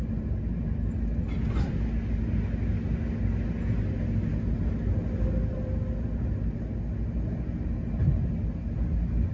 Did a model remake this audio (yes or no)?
no